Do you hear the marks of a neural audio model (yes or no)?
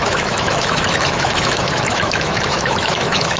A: yes